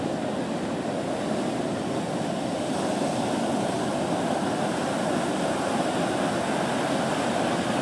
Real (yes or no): yes